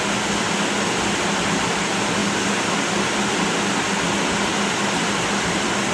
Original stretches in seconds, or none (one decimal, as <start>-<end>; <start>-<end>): 0.0-5.9